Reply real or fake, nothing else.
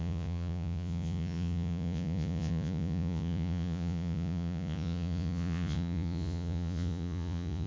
fake